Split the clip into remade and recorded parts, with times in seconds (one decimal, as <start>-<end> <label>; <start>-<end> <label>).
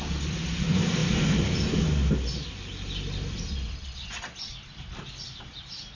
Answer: 0.0-1.0 remade; 1.0-4.4 recorded; 4.4-5.9 remade